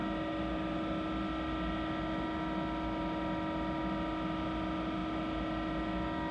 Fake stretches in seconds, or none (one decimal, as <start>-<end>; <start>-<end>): none

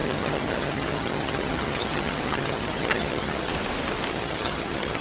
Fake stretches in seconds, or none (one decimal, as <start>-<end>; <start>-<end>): 0.0-3.5; 4.1-5.0

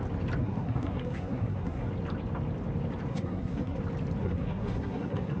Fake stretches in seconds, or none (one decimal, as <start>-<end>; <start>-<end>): 0.4-1.9; 3.1-3.8; 4.2-5.4